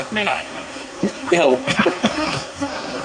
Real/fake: fake